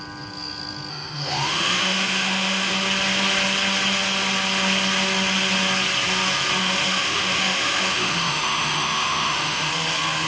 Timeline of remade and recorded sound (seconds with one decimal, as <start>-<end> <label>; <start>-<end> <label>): 0.0-0.9 recorded; 0.9-2.7 remade; 2.7-6.6 recorded; 6.6-9.7 remade; 9.7-10.3 recorded